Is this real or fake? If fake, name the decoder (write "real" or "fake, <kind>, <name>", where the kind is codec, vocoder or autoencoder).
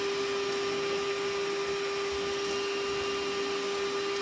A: real